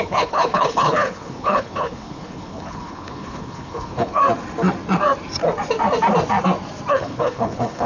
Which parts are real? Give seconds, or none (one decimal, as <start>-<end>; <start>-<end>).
4.2-6.9